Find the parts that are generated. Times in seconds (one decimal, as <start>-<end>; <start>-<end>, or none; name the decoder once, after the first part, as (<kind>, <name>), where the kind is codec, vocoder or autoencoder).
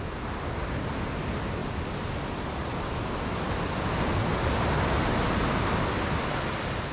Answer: none